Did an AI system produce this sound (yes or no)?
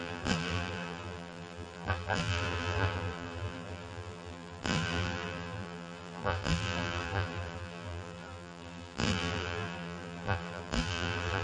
yes